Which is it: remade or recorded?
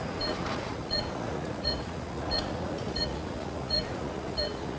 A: remade